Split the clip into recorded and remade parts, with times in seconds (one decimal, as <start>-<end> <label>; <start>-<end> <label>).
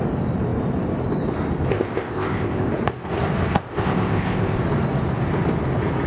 0.0-1.7 recorded; 1.7-2.7 remade; 2.7-3.5 recorded; 3.5-4.6 remade; 4.6-6.1 recorded